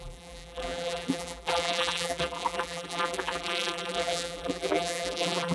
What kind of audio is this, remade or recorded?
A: remade